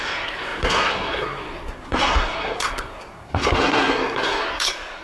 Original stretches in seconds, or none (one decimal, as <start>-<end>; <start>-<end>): none